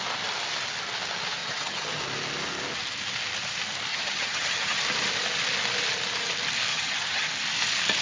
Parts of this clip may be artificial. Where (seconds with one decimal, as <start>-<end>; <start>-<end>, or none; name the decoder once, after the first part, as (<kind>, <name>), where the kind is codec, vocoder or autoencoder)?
1.4-2.0 (vocoder, HiFi-GAN); 3.9-4.8; 6.7-7.3